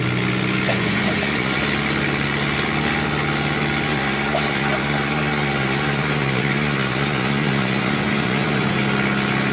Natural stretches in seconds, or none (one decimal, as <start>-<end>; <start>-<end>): 0.0-0.7; 1.6-3.9; 8.8-9.5

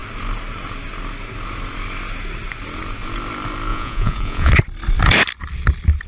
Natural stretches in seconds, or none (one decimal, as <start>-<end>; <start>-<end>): 0.0-3.7; 4.5-6.1